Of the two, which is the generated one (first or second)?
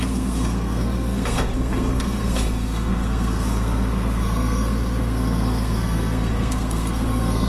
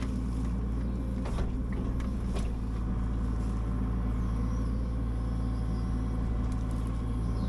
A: first